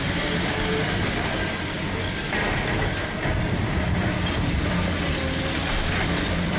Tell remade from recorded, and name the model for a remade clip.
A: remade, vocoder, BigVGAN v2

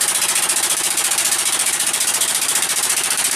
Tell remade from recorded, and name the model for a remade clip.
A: remade, vocoder, BigVGAN v2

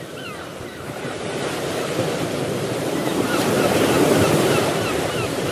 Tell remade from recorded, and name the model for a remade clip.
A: remade, vocoder, BigVGAN v2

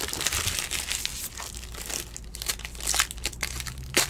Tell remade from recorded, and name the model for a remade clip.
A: recorded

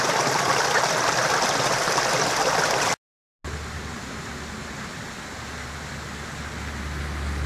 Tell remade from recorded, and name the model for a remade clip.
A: recorded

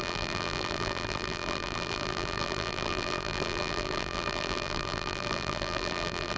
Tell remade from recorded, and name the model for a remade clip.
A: remade, vocoder, BigVGAN v2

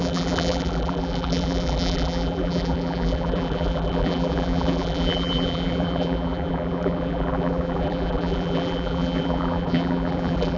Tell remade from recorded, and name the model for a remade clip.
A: remade, vocoder, BigVGAN v2